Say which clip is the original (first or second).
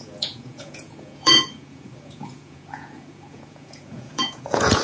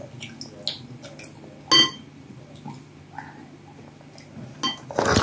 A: second